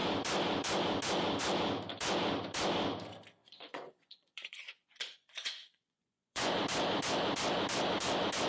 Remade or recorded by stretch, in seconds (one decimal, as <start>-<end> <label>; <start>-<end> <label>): 0.0-3.4 recorded; 3.4-6.5 remade; 6.5-8.5 recorded